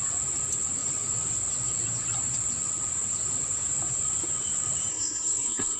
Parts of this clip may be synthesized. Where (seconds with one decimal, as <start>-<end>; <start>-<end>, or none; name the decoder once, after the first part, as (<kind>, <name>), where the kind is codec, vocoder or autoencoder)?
4.9-5.8 (codec, SNAC)